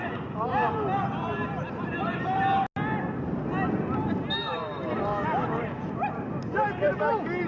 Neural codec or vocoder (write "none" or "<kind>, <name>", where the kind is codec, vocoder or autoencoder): none